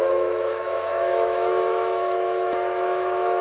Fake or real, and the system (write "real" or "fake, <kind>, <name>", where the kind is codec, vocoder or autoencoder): fake, autoencoder, DAC-VAE